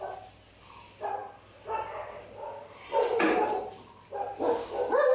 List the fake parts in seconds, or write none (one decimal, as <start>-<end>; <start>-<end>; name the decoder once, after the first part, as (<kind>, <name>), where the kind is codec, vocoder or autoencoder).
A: none